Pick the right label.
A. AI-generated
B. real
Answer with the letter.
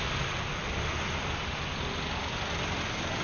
A